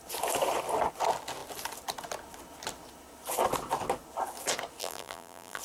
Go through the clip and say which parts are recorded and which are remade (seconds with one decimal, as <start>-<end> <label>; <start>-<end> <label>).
0.0-4.8 recorded; 4.8-5.6 remade

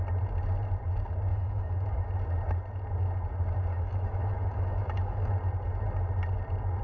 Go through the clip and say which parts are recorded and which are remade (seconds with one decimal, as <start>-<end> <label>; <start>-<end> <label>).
0.0-1.3 recorded; 1.3-2.1 remade; 2.1-3.7 recorded; 3.7-5.3 remade; 5.3-6.8 recorded

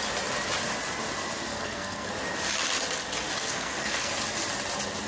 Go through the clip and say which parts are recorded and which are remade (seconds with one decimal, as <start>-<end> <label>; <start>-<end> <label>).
0.0-1.5 recorded; 1.5-2.1 remade; 2.1-3.4 recorded; 3.4-4.1 remade; 4.1-5.1 recorded

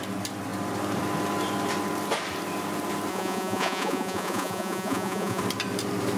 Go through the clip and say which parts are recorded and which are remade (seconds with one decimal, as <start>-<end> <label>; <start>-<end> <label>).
0.0-3.1 recorded; 3.1-5.4 remade; 5.4-6.2 recorded